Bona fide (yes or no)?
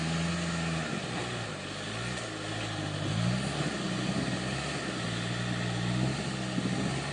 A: yes